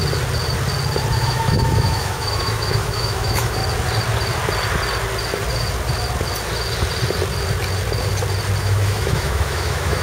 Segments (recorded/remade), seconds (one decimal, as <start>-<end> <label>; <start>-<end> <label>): 0.0-1.2 recorded; 1.2-3.6 remade; 3.6-8.6 recorded; 8.6-10.0 remade